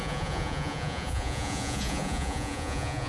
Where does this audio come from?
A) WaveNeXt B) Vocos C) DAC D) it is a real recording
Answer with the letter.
B